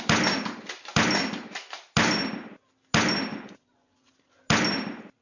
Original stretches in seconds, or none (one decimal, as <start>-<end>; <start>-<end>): 0.0-3.3; 4.1-5.2